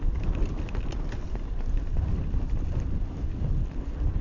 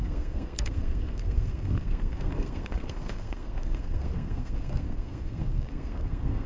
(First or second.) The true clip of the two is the first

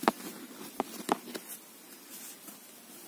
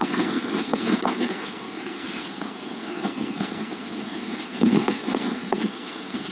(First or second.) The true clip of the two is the first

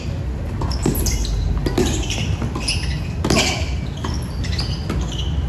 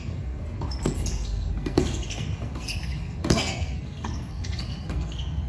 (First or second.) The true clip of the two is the first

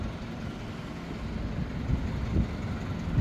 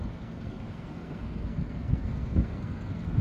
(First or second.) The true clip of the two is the first